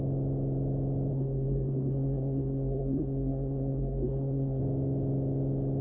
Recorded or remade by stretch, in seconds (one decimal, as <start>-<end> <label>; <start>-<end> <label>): 0.0-1.1 recorded; 1.1-4.6 remade; 4.6-5.8 recorded